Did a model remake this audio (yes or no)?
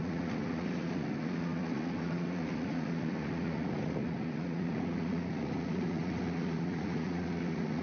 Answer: yes